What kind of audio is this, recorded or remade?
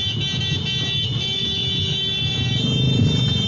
recorded